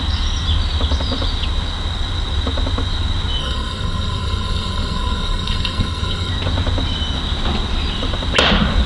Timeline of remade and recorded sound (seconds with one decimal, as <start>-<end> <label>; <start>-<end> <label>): 0.0-3.4 recorded; 3.4-6.3 remade; 6.3-8.9 recorded